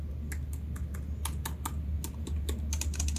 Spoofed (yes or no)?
no